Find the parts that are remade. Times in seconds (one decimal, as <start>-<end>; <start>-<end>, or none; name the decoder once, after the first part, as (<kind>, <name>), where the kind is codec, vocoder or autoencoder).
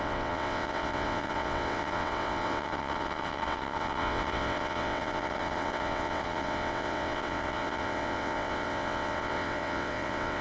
0.0-10.4 (vocoder, WaveNeXt)